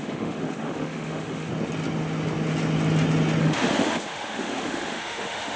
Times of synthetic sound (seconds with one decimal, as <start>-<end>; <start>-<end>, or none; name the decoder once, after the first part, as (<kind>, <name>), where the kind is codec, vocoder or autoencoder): 0.0-1.5 (autoencoder, DAC-VAE); 3.4-5.6